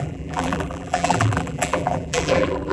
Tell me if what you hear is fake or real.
fake